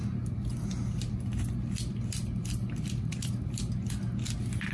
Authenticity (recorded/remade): recorded